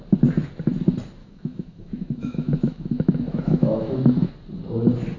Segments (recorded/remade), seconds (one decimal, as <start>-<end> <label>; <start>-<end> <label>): 0.0-1.2 recorded; 1.2-4.3 remade; 4.3-5.2 recorded